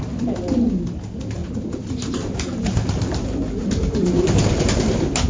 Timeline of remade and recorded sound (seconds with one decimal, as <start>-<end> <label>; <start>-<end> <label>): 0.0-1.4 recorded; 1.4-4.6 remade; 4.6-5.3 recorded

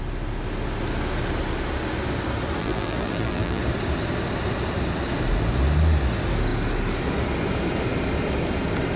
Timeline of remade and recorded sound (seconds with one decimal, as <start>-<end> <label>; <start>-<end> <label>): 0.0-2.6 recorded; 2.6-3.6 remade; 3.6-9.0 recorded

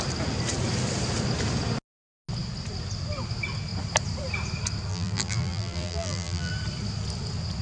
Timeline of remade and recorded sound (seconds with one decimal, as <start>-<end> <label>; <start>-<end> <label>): 0.0-4.9 recorded; 4.9-6.5 remade; 6.5-7.6 recorded